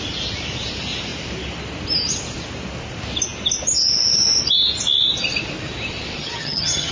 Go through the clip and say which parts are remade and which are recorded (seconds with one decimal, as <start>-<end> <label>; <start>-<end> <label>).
0.0-6.2 recorded; 6.2-6.9 remade